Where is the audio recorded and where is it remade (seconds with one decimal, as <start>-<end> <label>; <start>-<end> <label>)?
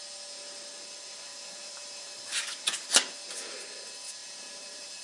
0.0-1.3 recorded; 1.3-2.9 remade; 2.9-4.2 recorded; 4.2-5.0 remade